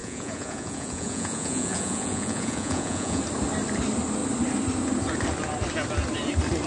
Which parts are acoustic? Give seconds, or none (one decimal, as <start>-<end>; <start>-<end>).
3.2-6.7